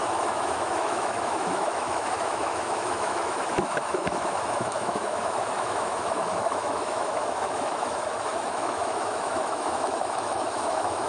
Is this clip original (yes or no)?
no